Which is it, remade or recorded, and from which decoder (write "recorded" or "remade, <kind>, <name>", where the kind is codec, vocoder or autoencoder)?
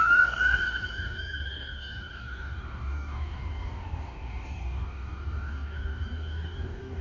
remade, codec, DAC